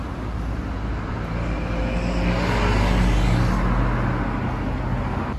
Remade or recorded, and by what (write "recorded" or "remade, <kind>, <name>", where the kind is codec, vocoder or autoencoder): recorded